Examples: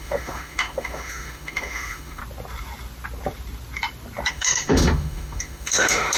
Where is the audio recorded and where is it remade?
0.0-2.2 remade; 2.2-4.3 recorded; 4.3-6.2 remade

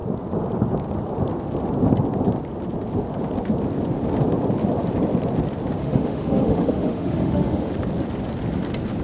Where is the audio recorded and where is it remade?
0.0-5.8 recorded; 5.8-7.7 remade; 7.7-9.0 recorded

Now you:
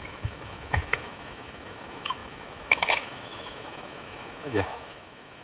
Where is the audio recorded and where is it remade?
0.0-5.4 remade